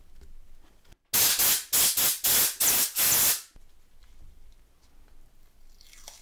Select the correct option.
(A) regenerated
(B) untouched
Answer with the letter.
B